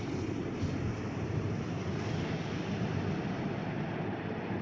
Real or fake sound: real